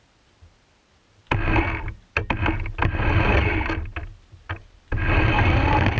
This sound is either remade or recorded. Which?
recorded